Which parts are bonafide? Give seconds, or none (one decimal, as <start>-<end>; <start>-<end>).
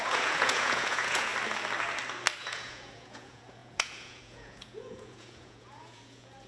1.3-2.4